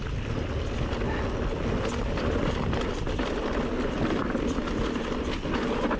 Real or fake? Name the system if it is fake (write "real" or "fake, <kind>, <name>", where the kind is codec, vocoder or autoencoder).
real